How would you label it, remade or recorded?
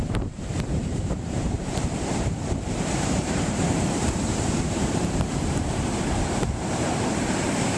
remade